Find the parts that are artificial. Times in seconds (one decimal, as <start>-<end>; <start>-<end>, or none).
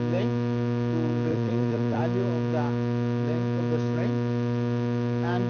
1.3-2.0